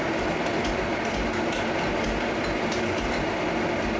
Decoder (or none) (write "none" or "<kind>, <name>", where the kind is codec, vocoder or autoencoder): none